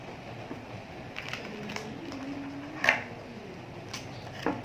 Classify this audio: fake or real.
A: real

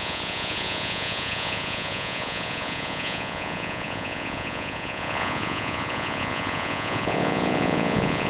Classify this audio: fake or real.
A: fake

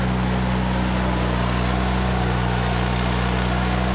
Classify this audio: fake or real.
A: real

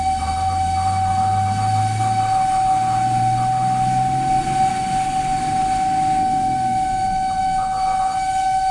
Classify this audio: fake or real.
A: real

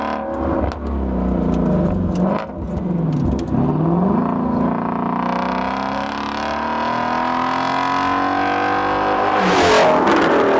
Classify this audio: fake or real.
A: real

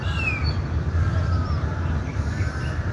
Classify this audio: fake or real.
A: real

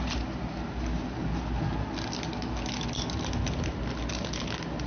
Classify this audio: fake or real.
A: real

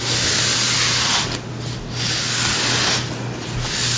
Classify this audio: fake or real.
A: real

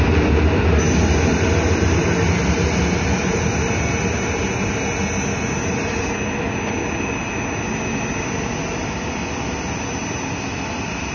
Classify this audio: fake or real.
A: real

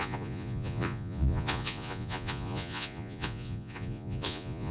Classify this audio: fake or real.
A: fake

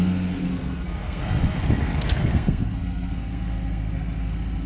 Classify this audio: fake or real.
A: fake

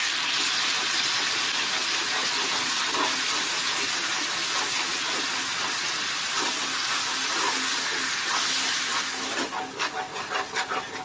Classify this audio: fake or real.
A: real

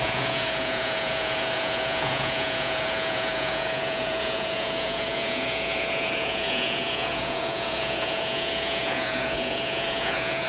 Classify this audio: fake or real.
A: fake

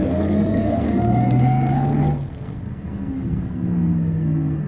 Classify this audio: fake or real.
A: fake